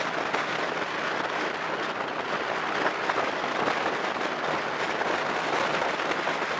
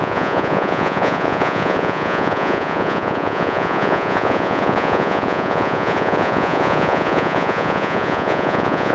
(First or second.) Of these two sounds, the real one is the first